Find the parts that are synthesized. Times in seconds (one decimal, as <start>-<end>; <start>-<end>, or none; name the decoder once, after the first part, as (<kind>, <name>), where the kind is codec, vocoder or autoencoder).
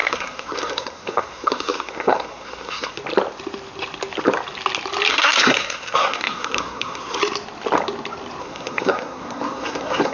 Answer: 0.0-3.0 (codec, SNAC); 5.1-7.2; 8.4-10.1